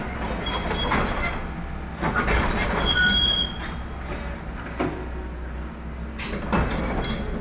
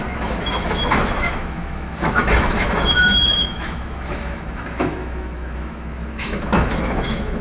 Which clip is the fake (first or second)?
second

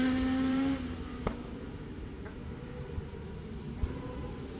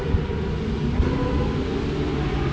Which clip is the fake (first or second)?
first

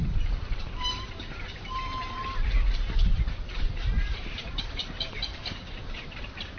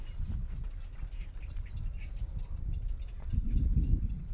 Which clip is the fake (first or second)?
first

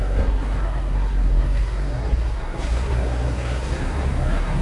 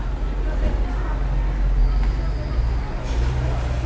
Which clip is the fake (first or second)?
first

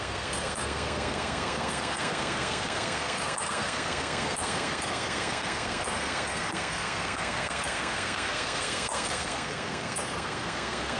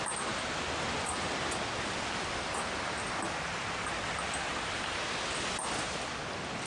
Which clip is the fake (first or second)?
first